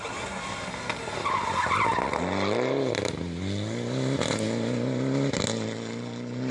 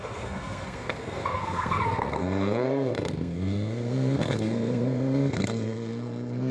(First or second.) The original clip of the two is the first